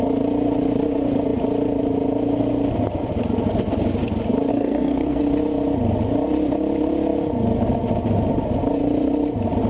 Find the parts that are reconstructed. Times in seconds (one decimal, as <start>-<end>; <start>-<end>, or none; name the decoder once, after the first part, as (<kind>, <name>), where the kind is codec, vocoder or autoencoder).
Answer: 4.5-5.2 (codec, SNAC)